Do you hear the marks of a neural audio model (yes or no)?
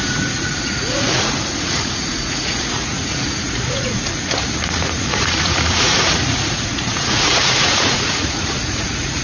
yes